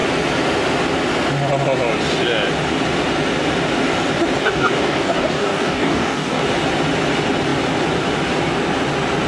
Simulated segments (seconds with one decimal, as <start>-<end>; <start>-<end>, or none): 4.4-6.4